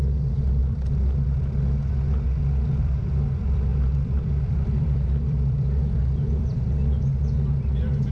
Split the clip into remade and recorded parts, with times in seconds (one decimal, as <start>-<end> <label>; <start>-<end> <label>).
0.0-0.6 remade; 0.6-2.8 recorded; 2.8-6.8 remade; 6.8-7.5 recorded; 7.5-8.1 remade